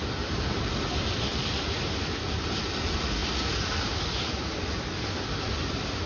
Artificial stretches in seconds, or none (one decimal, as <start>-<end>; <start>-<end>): 1.3-2.5; 3.2-4.0